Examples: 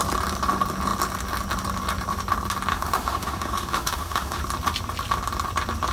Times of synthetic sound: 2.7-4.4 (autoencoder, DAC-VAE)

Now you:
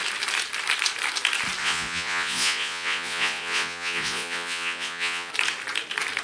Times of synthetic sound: 1.6-5.3 (vocoder, Vocos)

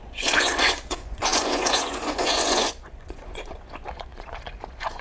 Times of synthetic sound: 0.0-5.0 (vocoder, Vocos)

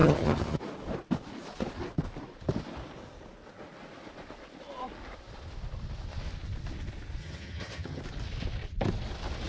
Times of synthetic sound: 0.0-0.6 (vocoder, HiFi-GAN); 7.2-8.0

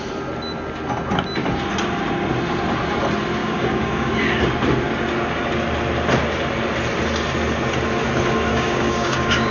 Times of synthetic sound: 3.4-4.1 (codec, DAC); 8.5-9.5

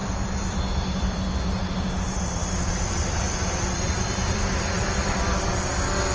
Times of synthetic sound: 0.0-1.2 (vocoder, BigVGAN v2); 2.4-5.5

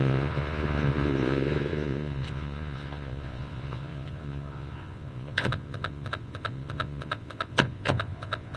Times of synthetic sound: 0.0-8.6 (vocoder, Vocos)